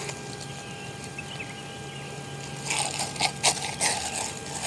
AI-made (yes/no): no